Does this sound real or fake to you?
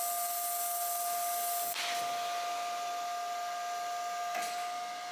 real